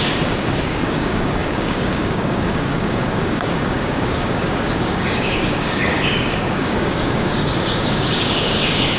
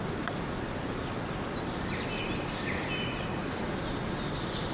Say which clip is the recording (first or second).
second